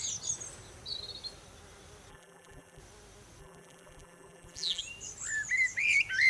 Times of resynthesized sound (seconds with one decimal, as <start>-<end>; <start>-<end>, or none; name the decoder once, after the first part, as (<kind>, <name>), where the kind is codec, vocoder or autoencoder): 2.1-2.8 (vocoder, BigVGAN v2); 3.4-4.8